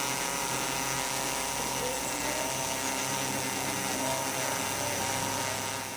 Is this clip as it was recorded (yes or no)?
yes